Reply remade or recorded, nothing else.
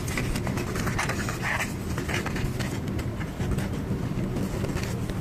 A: recorded